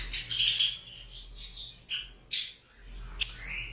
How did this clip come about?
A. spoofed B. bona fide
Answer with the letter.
B